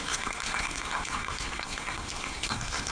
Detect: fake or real fake